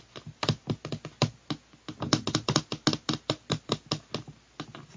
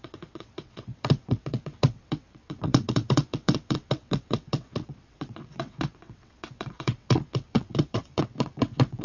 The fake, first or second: second